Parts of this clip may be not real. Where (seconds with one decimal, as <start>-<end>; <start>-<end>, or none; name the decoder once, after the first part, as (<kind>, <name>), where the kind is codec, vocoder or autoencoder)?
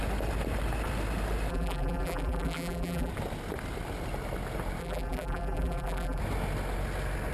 1.5-3.1 (vocoder, BigVGAN v2); 4.8-6.2